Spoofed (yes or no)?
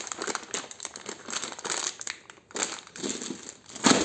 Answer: no